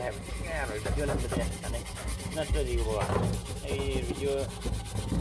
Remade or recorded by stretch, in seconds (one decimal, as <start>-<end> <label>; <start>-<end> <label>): 0.0-5.2 recorded